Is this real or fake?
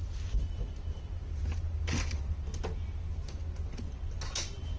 real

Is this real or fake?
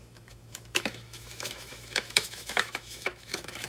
fake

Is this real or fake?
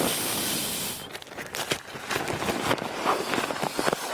real